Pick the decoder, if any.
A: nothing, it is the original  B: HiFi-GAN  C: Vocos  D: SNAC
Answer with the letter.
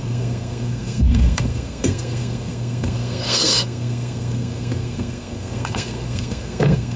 D